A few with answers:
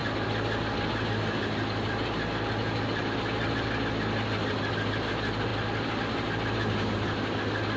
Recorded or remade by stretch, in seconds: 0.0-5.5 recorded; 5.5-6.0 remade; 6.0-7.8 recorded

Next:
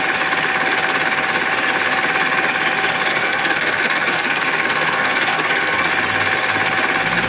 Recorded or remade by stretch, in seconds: 0.0-3.1 recorded; 3.1-5.9 remade; 5.9-7.3 recorded

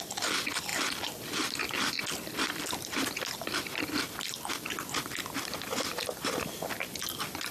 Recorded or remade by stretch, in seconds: 0.0-7.5 recorded

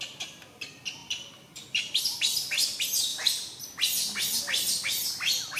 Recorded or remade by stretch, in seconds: 0.0-5.6 recorded